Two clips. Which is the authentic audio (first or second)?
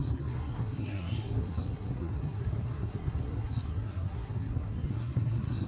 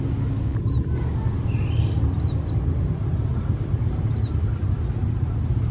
second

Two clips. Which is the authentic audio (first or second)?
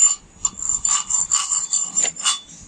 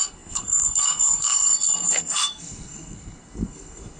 first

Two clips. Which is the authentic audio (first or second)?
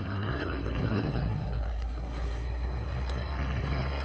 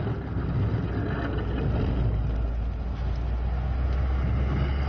second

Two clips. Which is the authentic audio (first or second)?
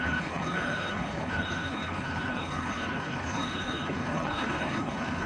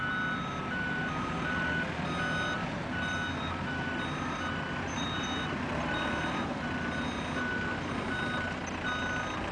second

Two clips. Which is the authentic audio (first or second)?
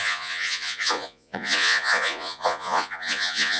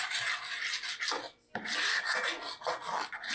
second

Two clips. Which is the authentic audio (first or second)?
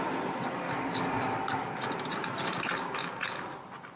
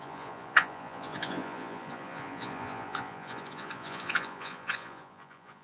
first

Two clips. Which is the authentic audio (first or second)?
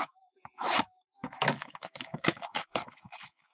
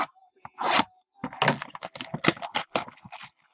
second